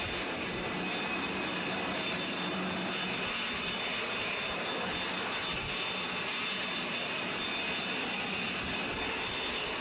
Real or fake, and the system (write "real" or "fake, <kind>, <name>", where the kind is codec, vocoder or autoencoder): real